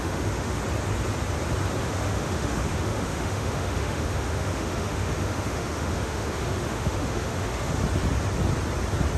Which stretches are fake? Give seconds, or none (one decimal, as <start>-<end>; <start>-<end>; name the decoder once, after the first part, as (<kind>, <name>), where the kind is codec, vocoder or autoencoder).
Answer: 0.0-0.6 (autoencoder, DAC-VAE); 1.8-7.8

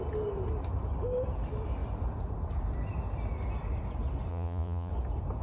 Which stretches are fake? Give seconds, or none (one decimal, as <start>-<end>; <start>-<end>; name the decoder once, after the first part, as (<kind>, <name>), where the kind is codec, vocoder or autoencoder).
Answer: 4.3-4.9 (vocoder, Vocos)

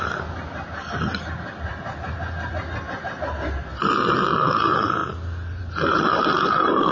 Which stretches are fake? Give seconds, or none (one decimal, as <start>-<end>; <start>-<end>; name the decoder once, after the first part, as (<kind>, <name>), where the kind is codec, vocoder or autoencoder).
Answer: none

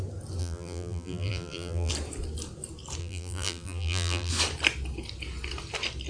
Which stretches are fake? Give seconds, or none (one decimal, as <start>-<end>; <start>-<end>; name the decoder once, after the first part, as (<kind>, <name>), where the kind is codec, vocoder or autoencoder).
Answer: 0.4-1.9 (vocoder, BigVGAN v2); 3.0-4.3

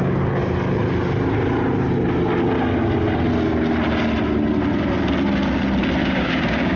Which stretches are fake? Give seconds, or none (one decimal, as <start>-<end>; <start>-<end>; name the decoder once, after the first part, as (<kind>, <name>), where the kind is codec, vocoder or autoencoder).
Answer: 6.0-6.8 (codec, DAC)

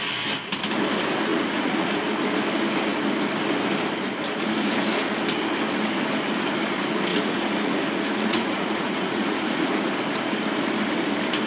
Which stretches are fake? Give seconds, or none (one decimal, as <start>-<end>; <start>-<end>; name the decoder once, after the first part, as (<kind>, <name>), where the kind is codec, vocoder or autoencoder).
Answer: 1.3-1.9 (vocoder, Vocos); 7.1-9.9

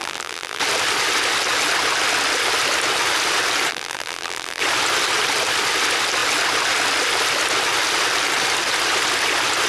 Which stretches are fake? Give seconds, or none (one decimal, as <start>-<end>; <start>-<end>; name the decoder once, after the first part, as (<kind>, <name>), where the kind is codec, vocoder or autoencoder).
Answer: 0.0-0.6 (vocoder, BigVGAN v2); 3.7-4.6

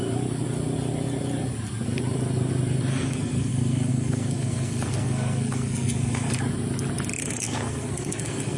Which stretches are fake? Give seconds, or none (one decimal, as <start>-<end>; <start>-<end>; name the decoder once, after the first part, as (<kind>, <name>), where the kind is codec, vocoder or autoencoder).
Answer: 2.9-6.4 (codec, SNAC); 7.2-8.6